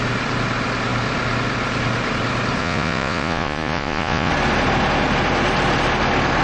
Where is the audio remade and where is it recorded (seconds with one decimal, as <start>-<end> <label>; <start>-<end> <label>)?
0.0-2.6 recorded; 2.6-4.3 remade; 4.3-6.4 recorded